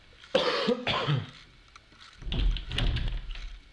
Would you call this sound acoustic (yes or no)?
yes